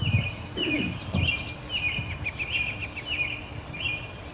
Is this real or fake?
real